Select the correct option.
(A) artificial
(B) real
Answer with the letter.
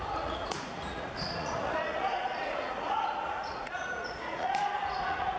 A